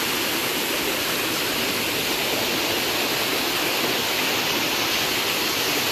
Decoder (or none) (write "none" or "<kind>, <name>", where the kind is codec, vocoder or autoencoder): none